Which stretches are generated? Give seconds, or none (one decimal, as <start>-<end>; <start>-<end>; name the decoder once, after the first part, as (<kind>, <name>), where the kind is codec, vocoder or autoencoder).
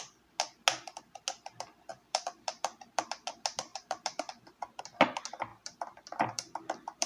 1.9-3.0 (vocoder, BigVGAN v2); 3.7-4.8; 5.5-7.1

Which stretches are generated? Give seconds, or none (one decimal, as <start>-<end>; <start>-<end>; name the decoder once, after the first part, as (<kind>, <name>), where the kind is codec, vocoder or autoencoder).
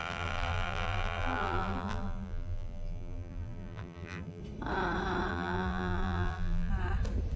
0.0-4.4 (vocoder, BigVGAN v2); 5.3-6.7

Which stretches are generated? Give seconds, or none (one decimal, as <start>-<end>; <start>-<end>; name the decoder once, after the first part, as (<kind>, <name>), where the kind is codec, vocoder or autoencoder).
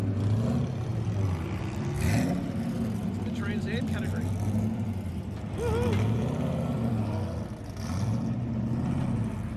0.9-5.5 (vocoder, BigVGAN v2); 6.2-8.5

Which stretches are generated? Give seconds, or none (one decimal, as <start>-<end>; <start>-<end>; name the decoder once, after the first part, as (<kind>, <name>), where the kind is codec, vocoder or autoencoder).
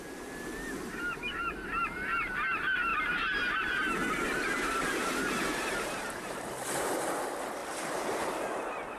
2.9-3.7 (vocoder, BigVGAN v2); 4.3-6.5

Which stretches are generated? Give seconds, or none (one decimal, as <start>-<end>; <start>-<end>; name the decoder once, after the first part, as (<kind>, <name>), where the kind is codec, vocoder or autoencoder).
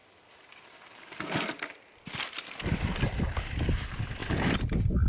0.0-1.9 (vocoder, BigVGAN v2)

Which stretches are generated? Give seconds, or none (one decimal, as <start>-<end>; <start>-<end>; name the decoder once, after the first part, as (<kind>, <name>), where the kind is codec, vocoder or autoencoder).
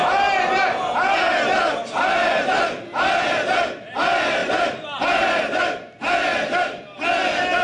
none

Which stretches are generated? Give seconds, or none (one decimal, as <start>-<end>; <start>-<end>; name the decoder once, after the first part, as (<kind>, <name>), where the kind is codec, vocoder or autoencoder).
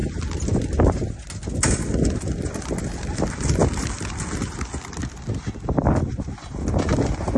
none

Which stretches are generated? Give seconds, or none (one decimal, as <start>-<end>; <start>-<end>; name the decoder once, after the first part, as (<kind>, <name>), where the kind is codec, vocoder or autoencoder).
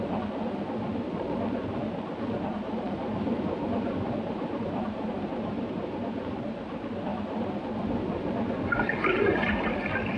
2.5-6.2 (vocoder, BigVGAN v2)